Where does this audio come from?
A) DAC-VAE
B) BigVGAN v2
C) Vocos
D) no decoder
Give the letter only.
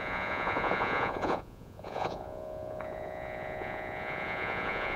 C